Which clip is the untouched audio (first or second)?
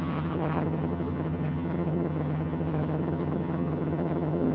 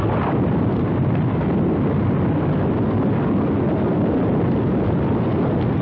second